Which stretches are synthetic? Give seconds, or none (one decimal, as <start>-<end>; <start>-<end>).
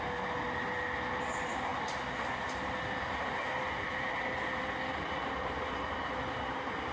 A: none